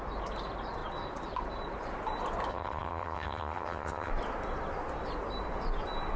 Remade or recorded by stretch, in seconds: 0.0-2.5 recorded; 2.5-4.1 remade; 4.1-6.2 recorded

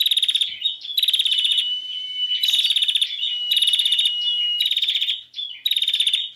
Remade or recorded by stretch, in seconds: 0.0-6.4 recorded

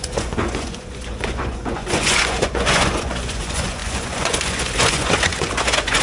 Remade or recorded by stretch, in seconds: 0.0-6.0 remade

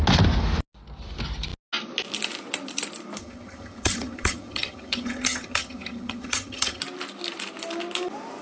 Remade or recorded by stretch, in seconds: 0.0-3.2 recorded; 3.2-6.8 remade; 6.8-8.4 recorded